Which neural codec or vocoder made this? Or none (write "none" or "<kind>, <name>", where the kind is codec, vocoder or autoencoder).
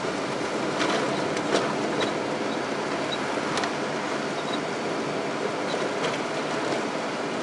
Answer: none